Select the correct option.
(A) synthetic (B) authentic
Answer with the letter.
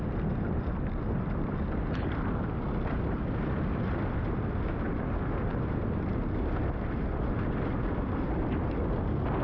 B